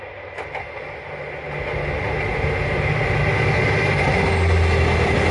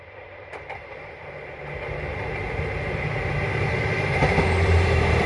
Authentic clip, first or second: first